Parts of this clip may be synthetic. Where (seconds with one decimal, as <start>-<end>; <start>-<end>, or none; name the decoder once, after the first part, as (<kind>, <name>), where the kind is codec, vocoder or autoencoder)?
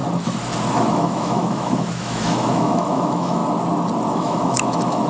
0.9-3.4 (autoencoder, DAC-VAE); 4.1-5.1